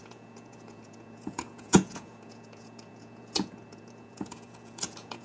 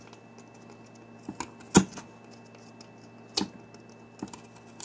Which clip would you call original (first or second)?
second